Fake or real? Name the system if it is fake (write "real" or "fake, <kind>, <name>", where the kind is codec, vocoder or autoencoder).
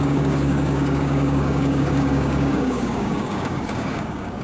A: fake, codec, DAC